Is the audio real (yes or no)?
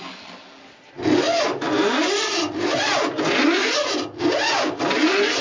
yes